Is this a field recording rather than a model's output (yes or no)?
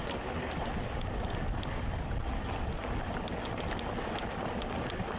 yes